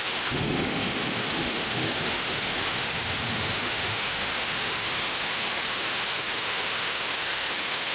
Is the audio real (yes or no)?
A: no